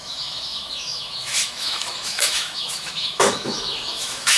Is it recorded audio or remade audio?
remade